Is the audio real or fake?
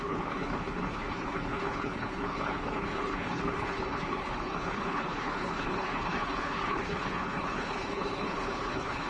fake